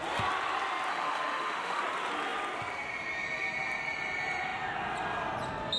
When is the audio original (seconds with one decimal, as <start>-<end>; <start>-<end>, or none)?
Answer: 0.0-0.9; 1.8-5.8